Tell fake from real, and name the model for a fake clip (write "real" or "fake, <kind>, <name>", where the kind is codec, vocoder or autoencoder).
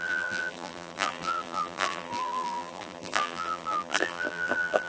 fake, vocoder, BigVGAN v2